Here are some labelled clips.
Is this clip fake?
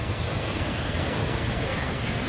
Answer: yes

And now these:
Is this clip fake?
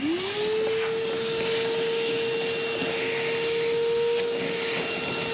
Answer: no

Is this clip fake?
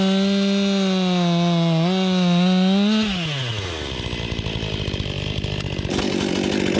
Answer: no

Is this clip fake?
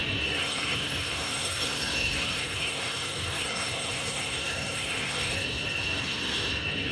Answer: yes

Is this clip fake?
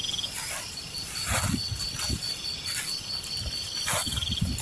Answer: no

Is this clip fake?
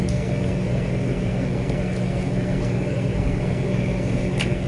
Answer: yes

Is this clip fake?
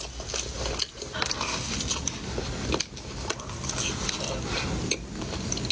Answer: no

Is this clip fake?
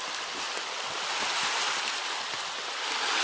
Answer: no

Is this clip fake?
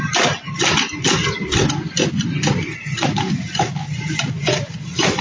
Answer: no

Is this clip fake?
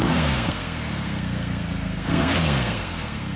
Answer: yes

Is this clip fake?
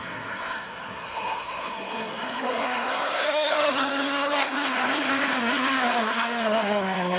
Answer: yes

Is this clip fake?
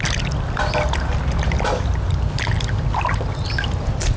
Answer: no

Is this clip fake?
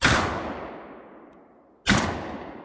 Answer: no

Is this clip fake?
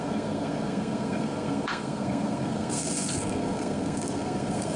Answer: yes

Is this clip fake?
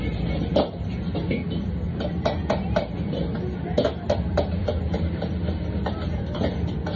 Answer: no